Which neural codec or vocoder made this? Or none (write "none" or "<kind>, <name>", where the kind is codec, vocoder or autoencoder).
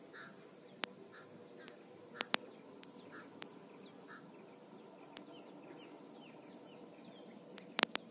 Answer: none